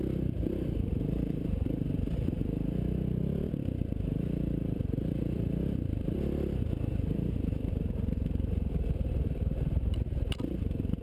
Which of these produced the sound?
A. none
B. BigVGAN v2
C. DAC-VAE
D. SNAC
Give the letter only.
B